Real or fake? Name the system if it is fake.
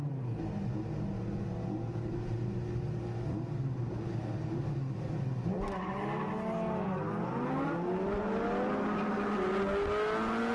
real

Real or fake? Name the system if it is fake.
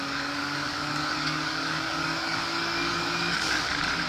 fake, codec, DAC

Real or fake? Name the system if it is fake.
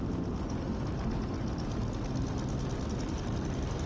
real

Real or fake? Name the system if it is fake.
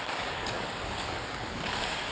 fake, codec, DAC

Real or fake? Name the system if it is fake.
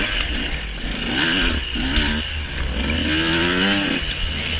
real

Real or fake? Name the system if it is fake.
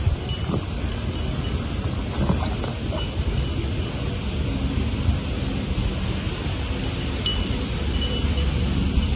real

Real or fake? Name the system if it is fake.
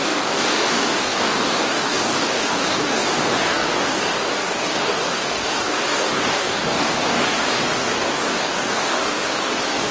fake, codec, DAC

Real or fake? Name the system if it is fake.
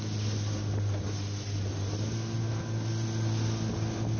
real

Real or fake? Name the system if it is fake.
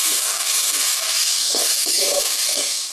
fake, codec, DAC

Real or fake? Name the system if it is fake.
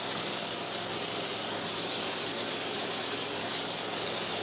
fake, codec, DAC